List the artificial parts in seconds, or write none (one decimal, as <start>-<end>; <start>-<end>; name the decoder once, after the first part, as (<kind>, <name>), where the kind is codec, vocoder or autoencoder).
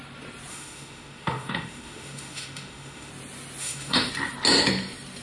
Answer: 0.5-3.1 (autoencoder, DAC-VAE); 3.6-4.1